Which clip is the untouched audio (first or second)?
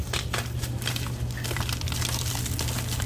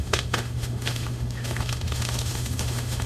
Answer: first